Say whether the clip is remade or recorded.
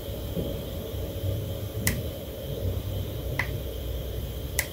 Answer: remade